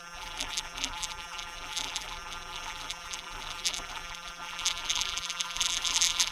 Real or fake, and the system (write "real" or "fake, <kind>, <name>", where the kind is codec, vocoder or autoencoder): fake, vocoder, BigVGAN v2